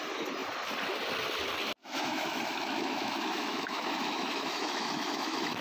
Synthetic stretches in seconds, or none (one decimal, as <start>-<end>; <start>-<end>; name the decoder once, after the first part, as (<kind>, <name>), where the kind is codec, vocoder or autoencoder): 1.8-5.6 (autoencoder, DAC-VAE)